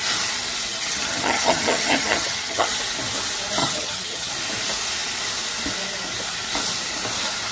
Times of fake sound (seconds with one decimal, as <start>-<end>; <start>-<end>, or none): 0.7-2.7; 3.6-4.3